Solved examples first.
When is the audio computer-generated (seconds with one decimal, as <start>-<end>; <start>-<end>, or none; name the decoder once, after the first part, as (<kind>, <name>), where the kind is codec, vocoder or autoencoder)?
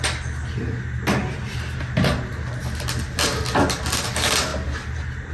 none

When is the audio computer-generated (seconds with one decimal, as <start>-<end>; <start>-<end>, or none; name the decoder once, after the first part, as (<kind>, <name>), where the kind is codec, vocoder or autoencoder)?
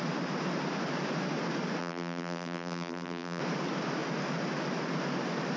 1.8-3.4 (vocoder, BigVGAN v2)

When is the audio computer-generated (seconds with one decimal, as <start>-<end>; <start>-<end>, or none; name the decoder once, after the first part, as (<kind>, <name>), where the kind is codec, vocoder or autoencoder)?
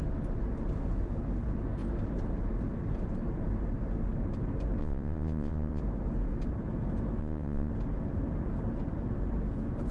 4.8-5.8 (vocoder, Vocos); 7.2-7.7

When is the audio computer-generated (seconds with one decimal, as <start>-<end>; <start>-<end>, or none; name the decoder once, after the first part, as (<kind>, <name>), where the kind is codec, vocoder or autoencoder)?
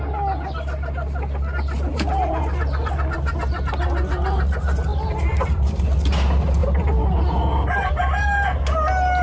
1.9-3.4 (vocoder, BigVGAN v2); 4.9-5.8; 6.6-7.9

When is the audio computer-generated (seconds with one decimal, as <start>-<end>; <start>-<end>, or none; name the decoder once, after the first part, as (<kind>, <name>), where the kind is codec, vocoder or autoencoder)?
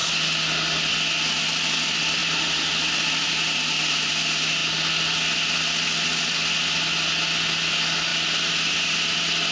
none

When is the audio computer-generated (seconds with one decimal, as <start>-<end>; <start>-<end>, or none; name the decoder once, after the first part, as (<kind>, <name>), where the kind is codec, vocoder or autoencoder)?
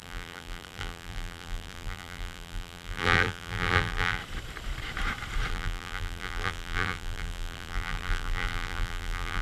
0.0-4.2 (vocoder, BigVGAN v2); 5.5-9.4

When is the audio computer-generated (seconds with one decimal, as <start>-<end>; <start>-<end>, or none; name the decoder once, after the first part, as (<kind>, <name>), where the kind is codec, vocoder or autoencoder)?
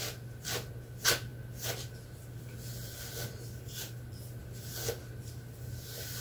none